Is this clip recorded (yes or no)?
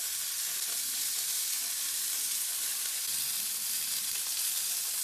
yes